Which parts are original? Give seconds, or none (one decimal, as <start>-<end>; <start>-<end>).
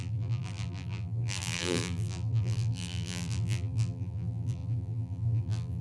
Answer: none